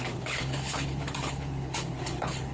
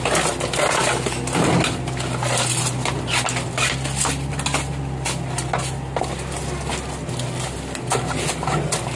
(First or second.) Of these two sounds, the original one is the second